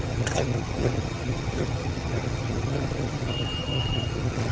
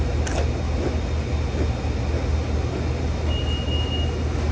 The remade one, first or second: first